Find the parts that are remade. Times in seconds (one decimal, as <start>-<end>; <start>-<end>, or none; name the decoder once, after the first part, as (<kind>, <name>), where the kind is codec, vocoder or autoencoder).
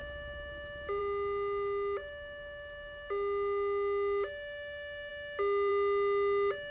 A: none